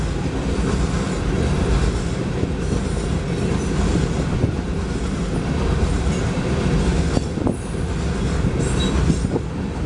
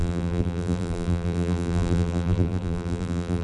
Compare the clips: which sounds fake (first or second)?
second